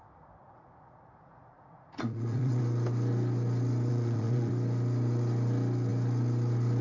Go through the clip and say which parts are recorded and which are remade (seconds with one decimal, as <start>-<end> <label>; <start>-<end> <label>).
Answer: 0.0-0.4 recorded; 0.4-2.6 remade; 2.6-3.9 recorded; 3.9-4.5 remade; 4.5-6.8 recorded